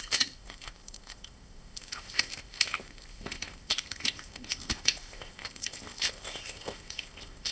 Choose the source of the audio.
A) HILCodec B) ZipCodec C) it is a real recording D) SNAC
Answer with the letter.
B